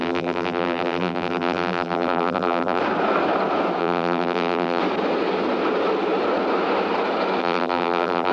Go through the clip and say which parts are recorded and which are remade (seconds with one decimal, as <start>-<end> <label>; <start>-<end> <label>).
0.0-2.8 remade; 2.8-3.8 recorded; 3.8-4.8 remade; 4.8-7.4 recorded; 7.4-8.3 remade